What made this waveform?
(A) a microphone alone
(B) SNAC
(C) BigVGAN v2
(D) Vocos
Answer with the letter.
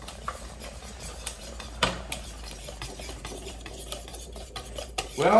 C